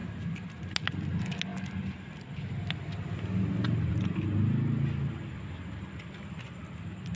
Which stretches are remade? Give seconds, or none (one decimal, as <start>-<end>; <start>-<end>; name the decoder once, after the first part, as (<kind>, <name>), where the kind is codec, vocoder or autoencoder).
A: none